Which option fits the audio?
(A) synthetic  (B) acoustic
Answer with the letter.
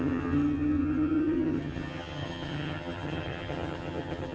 A